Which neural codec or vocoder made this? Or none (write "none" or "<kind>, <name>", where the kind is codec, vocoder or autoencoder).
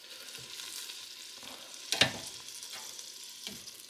none